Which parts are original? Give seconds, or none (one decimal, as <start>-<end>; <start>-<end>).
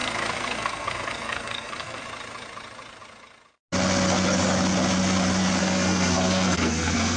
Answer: 2.0-5.6